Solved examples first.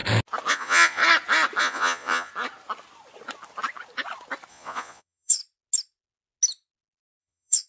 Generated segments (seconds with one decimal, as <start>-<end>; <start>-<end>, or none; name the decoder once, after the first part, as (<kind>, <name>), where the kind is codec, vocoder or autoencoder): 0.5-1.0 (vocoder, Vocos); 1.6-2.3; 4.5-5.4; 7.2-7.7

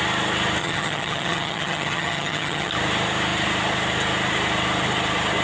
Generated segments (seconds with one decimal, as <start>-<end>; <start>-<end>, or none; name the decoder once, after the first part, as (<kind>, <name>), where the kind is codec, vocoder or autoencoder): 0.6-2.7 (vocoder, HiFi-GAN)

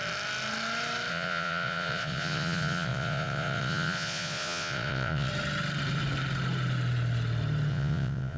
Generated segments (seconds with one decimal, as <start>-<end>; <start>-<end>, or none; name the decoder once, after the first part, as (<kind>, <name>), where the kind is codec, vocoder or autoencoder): 1.1-5.3 (vocoder, Vocos); 7.7-8.4